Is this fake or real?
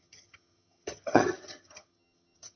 fake